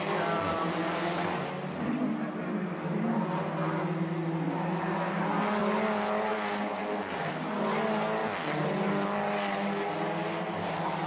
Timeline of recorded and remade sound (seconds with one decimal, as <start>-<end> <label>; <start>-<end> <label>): 0.0-11.1 recorded